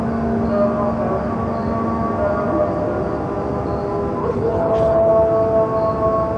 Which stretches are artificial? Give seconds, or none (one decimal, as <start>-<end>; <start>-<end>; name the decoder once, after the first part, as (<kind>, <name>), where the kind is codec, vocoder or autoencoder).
4.2-5.1 (codec, HILCodec)